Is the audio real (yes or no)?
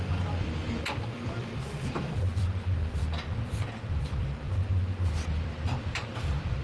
no